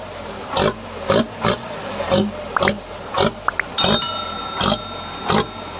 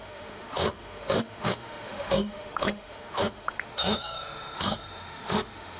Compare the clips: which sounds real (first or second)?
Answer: first